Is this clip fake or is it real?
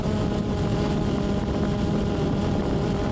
real